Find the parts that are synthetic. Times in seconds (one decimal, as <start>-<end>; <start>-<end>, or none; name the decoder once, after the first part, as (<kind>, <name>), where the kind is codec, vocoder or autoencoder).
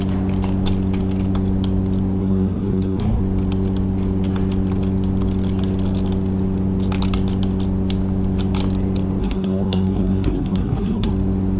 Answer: 2.2-3.2 (codec, SNAC); 9.2-11.1